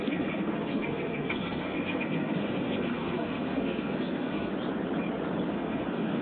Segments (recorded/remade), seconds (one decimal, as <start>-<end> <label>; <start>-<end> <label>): 0.0-4.5 remade; 4.5-5.5 recorded; 5.5-6.2 remade